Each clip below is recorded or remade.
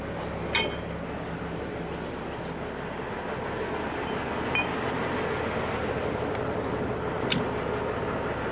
recorded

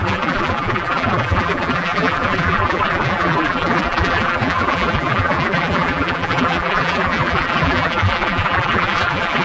remade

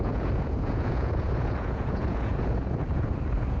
remade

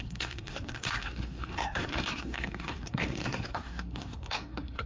remade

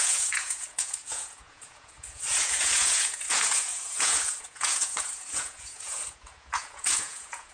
remade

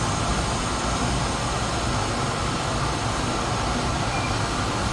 recorded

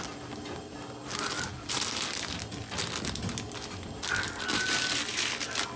recorded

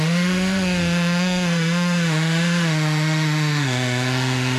remade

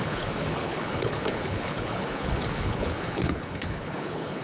remade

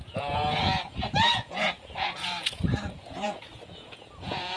remade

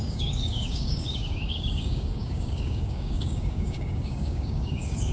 remade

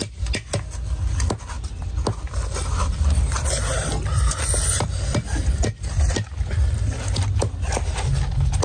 recorded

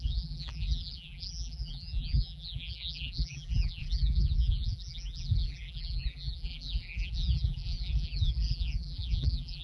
remade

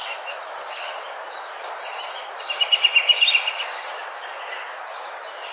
recorded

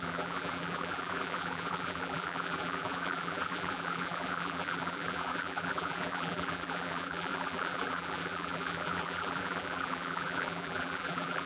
remade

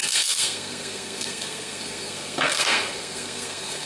remade